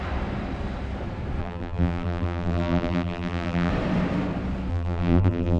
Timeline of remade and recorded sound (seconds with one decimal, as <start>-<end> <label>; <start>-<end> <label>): 0.0-1.4 recorded; 1.4-3.7 remade; 3.7-4.7 recorded; 4.7-5.6 remade